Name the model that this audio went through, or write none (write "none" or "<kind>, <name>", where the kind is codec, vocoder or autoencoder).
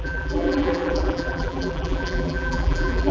vocoder, BigVGAN v2